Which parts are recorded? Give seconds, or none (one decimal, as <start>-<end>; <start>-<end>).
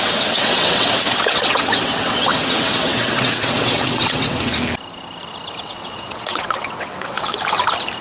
4.5-5.6; 7.3-8.0